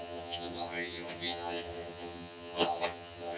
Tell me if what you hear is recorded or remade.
remade